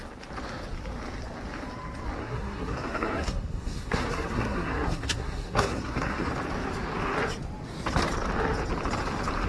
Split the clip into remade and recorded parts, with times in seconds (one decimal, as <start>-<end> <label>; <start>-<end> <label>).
0.0-2.2 recorded; 2.2-6.3 remade; 6.3-9.5 recorded